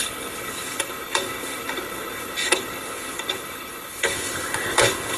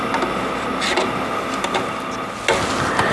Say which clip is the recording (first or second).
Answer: second